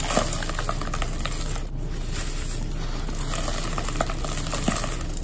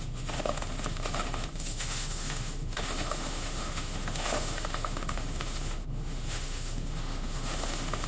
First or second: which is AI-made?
second